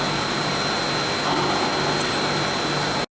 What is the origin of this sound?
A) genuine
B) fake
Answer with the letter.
A